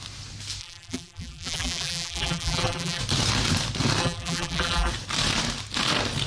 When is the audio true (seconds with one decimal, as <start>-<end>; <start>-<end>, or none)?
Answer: 0.0-0.6; 3.0-4.0; 4.9-6.3